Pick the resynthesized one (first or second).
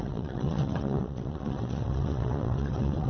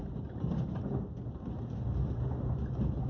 first